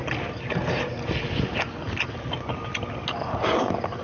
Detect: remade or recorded recorded